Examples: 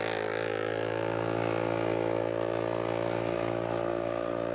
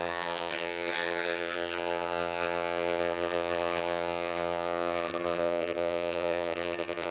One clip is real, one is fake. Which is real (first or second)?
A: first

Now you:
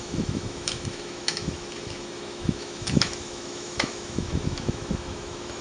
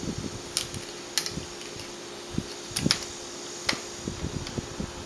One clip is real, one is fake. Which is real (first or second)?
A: second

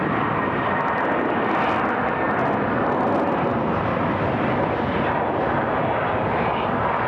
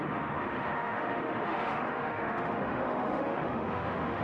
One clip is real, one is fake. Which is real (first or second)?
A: first